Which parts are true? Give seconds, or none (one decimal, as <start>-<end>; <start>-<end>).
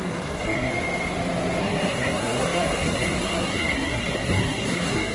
0.7-1.6